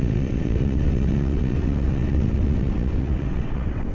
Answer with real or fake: fake